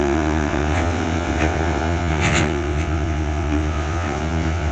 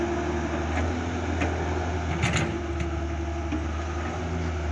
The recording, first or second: second